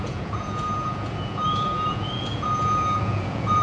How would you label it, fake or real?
fake